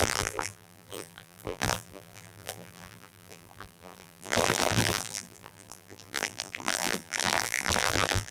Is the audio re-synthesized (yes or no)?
yes